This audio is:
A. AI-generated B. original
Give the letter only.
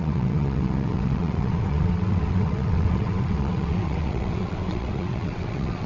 A